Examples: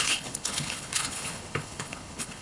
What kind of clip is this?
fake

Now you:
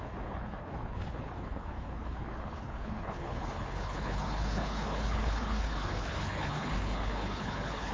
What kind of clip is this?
fake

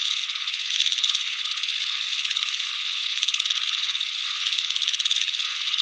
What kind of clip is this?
fake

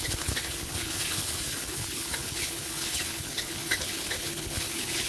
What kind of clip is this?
fake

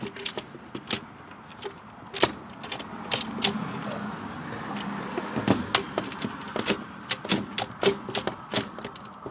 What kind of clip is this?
real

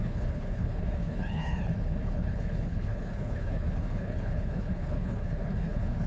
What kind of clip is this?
fake